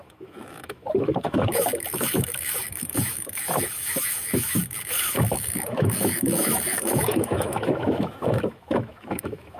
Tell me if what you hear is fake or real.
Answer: fake